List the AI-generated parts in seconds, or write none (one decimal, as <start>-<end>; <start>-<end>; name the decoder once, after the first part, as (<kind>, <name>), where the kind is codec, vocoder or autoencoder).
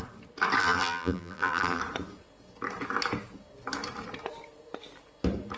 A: 0.6-1.8 (vocoder, BigVGAN v2)